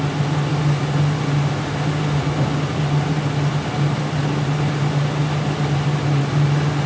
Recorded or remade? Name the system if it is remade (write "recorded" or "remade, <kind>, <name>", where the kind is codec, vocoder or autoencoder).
recorded